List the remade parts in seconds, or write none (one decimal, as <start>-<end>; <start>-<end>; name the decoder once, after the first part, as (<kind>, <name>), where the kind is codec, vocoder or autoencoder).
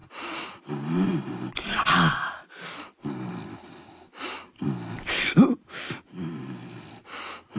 none